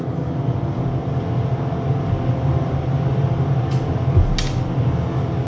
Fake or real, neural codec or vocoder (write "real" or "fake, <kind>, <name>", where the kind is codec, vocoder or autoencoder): real